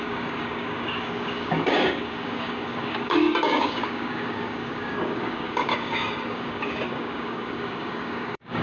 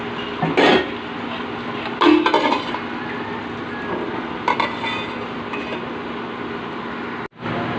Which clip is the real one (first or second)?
second